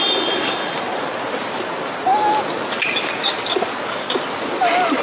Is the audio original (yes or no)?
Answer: yes